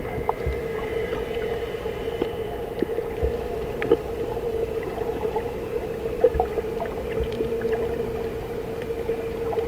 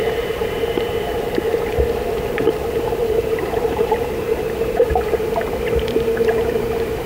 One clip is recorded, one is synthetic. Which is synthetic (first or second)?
second